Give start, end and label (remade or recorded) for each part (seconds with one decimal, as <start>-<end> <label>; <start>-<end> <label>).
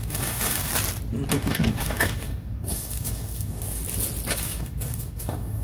0.0-0.7 remade; 0.7-1.3 recorded; 1.3-3.8 remade; 3.8-4.3 recorded; 4.3-5.6 remade